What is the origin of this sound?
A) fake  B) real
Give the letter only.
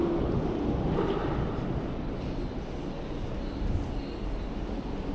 B